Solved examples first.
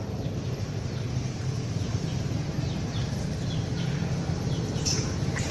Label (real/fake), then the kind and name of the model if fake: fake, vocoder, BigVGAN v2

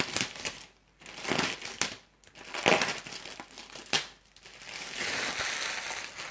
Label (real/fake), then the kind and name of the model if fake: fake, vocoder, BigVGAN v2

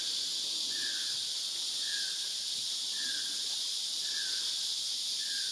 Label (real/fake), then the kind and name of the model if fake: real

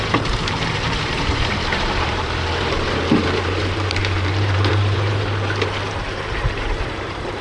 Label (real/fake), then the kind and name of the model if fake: fake, vocoder, BigVGAN v2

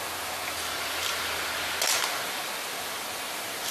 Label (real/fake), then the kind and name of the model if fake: real